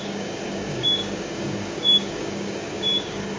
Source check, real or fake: fake